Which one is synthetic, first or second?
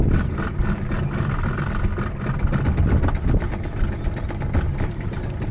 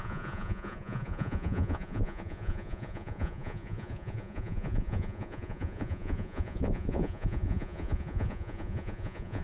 second